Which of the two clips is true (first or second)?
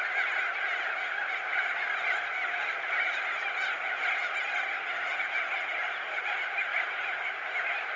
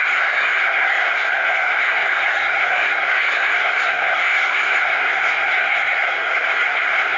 first